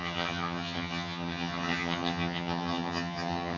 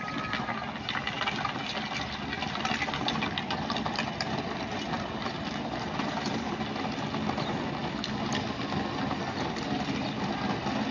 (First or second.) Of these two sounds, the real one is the second